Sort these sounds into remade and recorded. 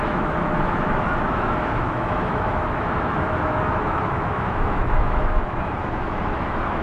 remade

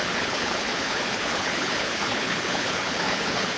remade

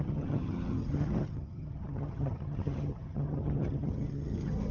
remade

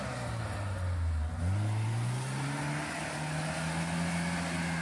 recorded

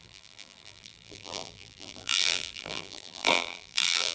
remade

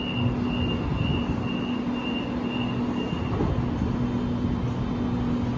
recorded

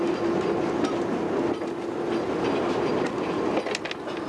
recorded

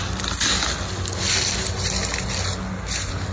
recorded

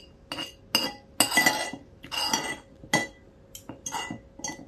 recorded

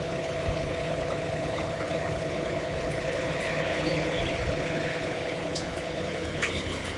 remade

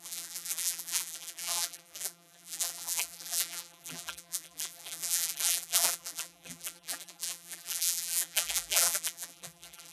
remade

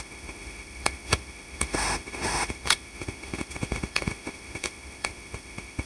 remade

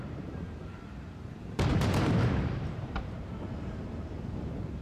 remade